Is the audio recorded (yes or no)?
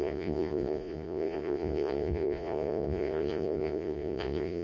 no